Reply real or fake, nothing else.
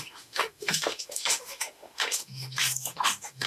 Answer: fake